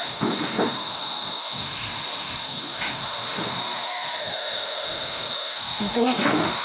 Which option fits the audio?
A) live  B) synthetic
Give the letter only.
B